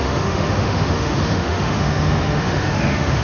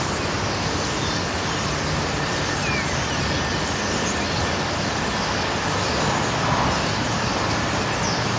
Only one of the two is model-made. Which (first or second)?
first